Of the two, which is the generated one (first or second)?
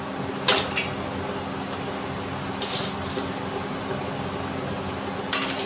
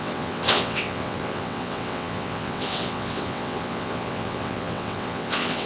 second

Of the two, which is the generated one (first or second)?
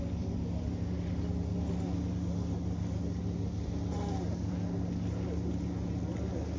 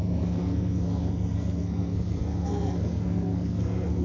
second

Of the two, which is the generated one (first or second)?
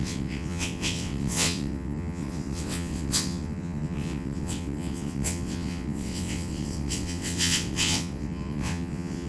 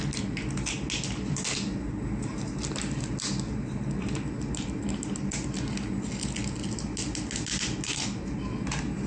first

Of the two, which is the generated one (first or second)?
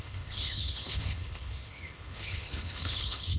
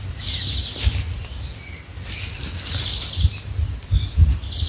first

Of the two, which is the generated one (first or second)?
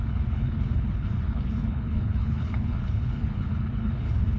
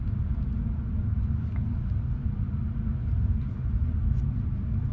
first